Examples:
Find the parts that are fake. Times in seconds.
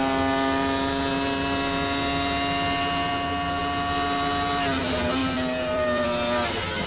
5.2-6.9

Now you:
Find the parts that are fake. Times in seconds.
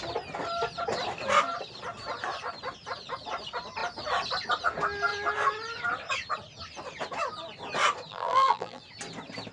8.1-8.8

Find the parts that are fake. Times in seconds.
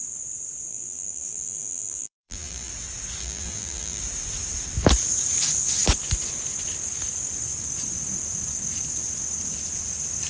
0.7-2.7; 3.2-4.0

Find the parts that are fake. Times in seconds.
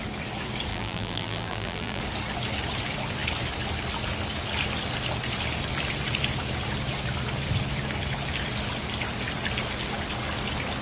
0.7-2.0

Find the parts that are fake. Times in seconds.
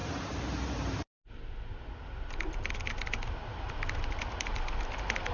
0.0-1.1; 3.5-4.6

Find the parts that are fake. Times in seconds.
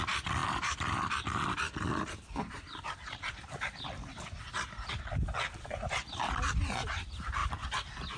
0.4-4.9; 7.4-8.2